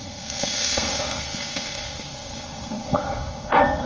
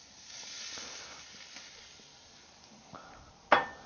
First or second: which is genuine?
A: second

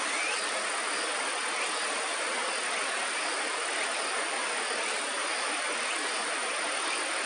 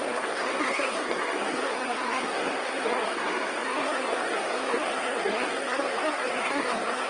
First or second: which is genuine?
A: first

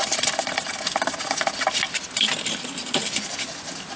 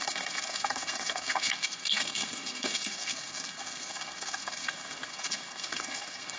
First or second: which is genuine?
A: first